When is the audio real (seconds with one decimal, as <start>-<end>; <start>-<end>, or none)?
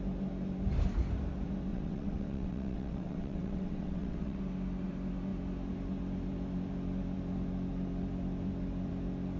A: 0.0-1.7; 4.4-9.4